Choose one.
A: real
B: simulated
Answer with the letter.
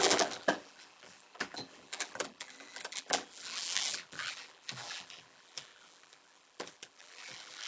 B